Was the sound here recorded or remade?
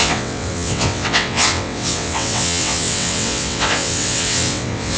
remade